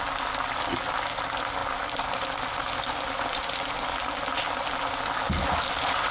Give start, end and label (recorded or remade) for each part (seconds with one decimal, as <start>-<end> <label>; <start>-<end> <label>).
0.0-6.1 recorded